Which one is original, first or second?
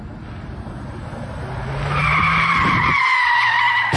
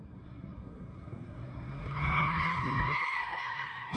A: first